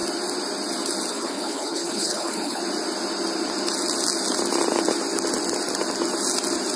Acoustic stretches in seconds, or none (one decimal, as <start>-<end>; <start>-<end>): 0.0-1.1; 2.6-6.8